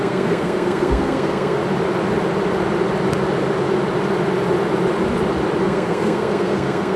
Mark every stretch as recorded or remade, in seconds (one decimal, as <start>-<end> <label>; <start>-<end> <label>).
0.0-1.6 remade; 1.6-5.6 recorded; 5.6-7.0 remade